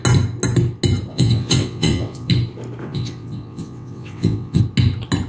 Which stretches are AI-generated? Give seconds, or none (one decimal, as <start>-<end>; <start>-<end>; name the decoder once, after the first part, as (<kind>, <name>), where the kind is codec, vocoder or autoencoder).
1.1-2.3 (vocoder, WaveNeXt); 2.8-4.6